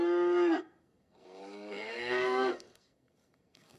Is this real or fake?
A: fake